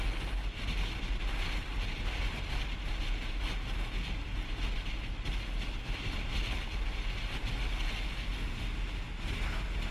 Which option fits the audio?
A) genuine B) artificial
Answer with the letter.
A